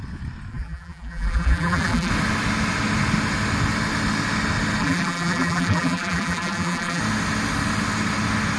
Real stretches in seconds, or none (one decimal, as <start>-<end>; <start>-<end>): 0.0-0.5; 2.1-4.8; 7.0-8.6